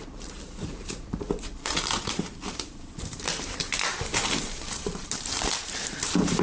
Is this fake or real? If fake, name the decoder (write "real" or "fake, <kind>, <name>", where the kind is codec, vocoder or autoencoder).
fake, vocoder, BigVGAN v2